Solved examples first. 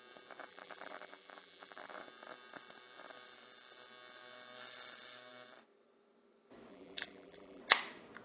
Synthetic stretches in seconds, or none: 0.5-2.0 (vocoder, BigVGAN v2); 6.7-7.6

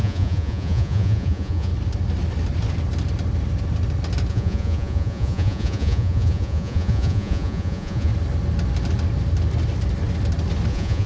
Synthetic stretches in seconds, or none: 0.0-1.7 (vocoder, Vocos); 4.3-8.1; 10.7-11.1

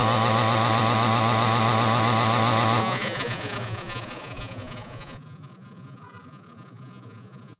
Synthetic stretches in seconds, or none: 2.8-7.6 (vocoder, Vocos)

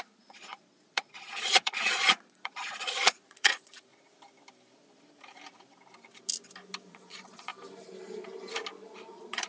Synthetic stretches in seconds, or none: 0.0-3.9 (vocoder, Vocos); 6.9-7.5; 9.1-9.5

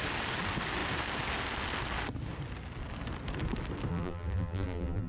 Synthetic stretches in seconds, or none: 3.9-5.1 (vocoder, BigVGAN v2)

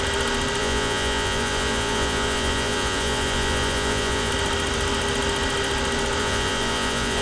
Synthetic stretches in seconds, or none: 0.6-4.3 (vocoder, Vocos); 6.2-7.2

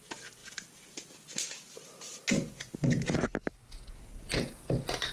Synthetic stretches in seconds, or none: none

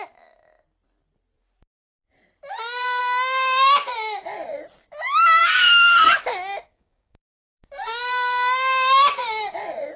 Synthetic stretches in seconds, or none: 5.4-9.5 (codec, DAC)